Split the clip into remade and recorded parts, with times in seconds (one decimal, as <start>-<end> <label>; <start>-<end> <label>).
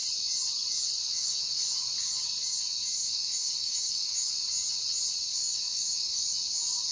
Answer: 0.0-1.1 recorded; 1.1-1.7 remade; 1.7-3.0 recorded; 3.0-4.3 remade; 4.3-5.4 recorded; 5.4-6.2 remade; 6.2-6.9 recorded